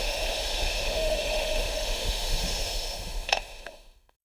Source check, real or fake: fake